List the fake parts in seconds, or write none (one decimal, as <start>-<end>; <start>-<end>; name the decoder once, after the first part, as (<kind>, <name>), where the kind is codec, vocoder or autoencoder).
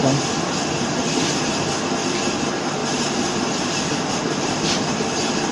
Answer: none